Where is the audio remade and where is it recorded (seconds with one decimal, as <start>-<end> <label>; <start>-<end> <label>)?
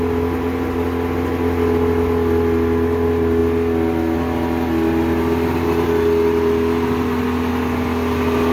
0.0-8.5 recorded